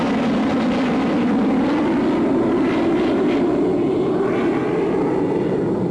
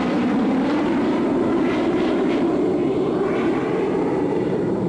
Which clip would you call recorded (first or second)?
first